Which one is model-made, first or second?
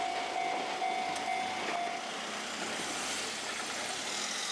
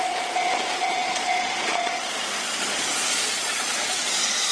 second